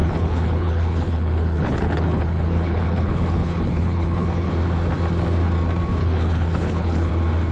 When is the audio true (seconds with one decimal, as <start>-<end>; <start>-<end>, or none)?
4.5-6.0; 7.1-7.5